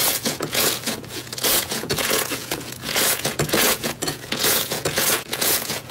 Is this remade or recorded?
remade